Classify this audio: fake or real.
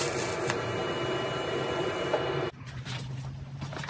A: real